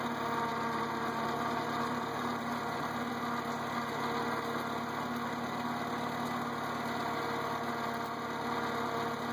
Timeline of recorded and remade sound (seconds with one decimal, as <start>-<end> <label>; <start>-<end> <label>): 0.0-0.5 recorded; 0.5-3.1 remade; 3.1-9.3 recorded